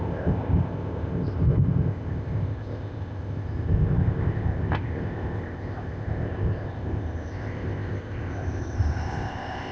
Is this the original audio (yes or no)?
no